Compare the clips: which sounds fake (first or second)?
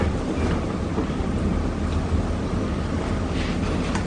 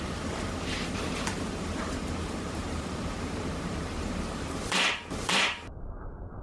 second